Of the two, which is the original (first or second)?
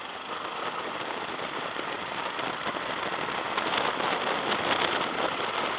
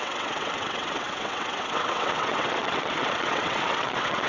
first